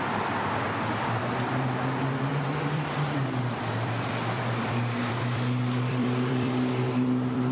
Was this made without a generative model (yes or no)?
no